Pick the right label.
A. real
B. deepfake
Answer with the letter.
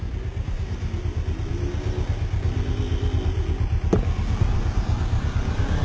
A